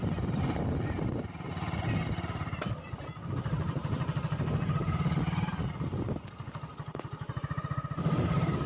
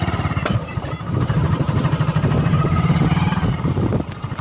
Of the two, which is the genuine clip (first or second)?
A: first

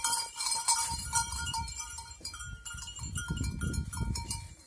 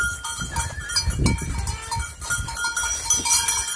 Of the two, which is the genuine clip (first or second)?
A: second